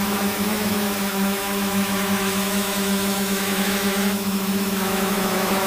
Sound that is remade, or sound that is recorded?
remade